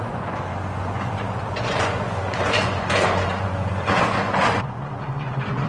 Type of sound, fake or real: fake